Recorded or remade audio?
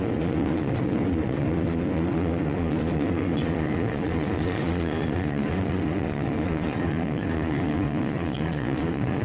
remade